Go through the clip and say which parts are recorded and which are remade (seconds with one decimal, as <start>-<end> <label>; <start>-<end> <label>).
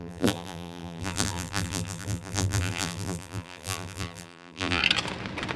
0.0-4.8 remade; 4.8-5.6 recorded